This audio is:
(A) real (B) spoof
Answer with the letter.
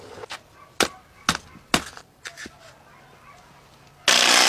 A